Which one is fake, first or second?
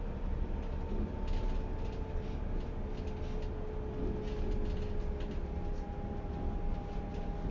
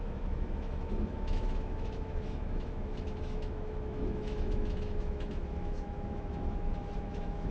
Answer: second